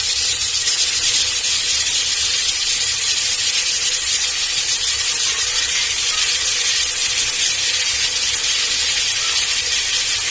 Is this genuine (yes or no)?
yes